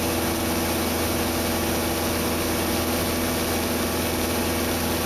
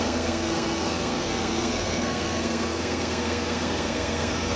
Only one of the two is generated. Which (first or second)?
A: second